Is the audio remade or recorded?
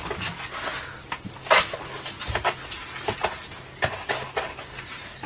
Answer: recorded